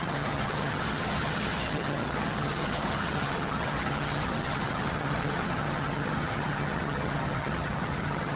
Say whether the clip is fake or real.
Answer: fake